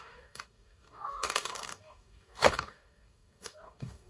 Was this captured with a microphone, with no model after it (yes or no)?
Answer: no